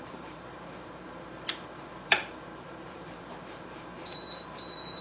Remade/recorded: remade